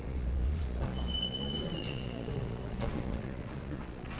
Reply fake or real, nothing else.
fake